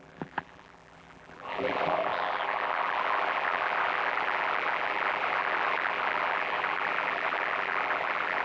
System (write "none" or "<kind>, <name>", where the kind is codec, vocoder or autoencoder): vocoder, BigVGAN v2